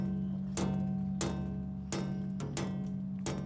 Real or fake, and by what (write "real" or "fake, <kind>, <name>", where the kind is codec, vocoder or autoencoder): real